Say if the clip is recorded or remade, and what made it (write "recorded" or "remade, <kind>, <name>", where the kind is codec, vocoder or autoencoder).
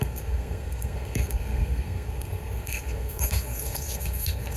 remade, codec, SNAC